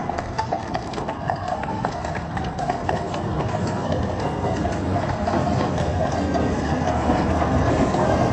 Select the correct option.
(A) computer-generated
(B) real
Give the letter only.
A